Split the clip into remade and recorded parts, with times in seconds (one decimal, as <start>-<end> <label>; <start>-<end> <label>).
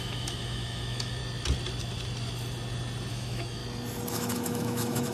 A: 0.0-1.2 remade; 1.2-3.1 recorded; 3.1-3.6 remade; 3.6-4.1 recorded; 4.1-5.1 remade